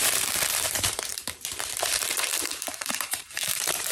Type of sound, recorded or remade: remade